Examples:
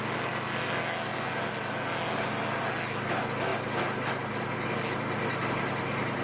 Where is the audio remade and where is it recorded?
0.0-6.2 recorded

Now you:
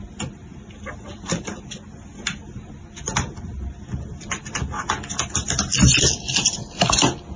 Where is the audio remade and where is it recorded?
0.0-7.4 recorded

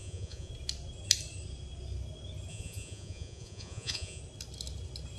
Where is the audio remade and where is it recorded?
0.0-0.5 remade; 0.5-2.5 recorded; 2.5-4.2 remade; 4.2-5.2 recorded

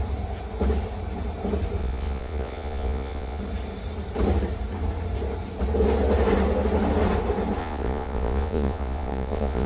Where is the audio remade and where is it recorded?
0.0-1.8 recorded; 1.8-3.4 remade; 3.4-7.6 recorded; 7.6-9.7 remade